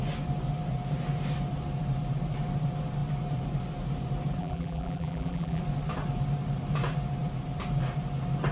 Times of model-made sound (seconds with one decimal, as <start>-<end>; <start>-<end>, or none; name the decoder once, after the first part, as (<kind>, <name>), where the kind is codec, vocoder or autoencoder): 4.4-5.6 (vocoder, BigVGAN v2)